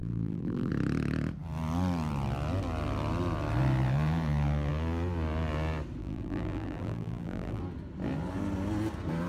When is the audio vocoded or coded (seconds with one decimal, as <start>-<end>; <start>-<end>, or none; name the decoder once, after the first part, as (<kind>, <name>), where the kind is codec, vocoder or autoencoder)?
0.0-0.7 (vocoder, BigVGAN v2); 6.0-7.6